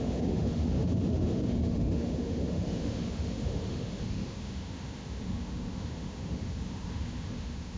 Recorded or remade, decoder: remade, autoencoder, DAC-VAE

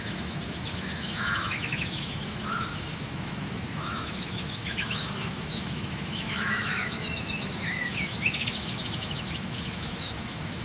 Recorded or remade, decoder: remade, autoencoder, DAC-VAE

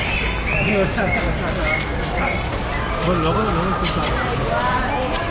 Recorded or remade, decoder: recorded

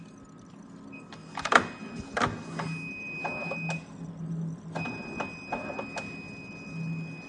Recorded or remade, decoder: recorded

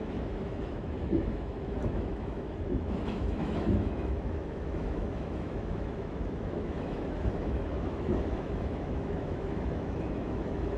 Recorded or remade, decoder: remade, autoencoder, DAC-VAE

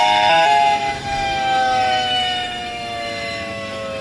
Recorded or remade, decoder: remade, autoencoder, DAC-VAE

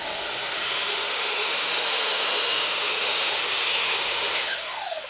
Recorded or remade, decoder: remade, autoencoder, DAC-VAE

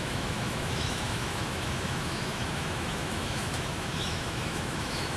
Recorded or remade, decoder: remade, autoencoder, DAC-VAE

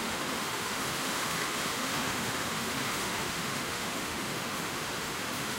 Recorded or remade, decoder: remade, autoencoder, DAC-VAE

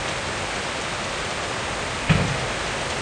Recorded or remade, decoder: recorded